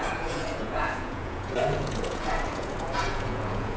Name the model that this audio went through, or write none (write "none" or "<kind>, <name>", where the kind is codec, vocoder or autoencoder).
vocoder, Vocos